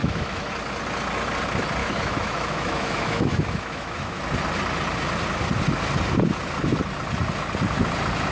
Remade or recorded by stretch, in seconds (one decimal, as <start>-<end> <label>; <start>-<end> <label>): 0.0-0.5 remade; 0.5-1.8 recorded; 1.8-4.2 remade; 4.2-8.3 recorded